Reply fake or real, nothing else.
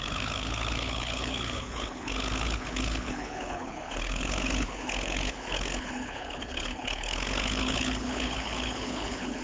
fake